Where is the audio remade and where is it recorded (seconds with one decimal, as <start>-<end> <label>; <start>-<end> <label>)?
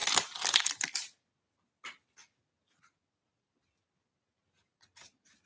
0.0-5.5 recorded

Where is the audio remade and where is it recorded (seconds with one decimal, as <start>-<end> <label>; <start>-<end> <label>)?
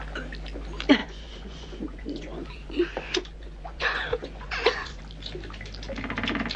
0.0-1.0 recorded; 1.0-5.0 remade; 5.0-6.6 recorded